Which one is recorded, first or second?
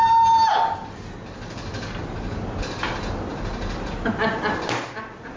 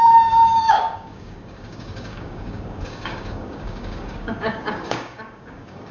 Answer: first